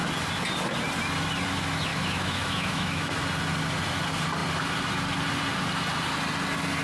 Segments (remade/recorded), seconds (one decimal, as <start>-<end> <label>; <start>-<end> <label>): 0.0-1.9 recorded; 1.9-3.2 remade; 3.2-6.8 recorded